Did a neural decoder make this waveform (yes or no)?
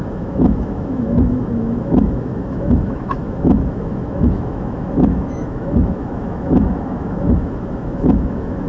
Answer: yes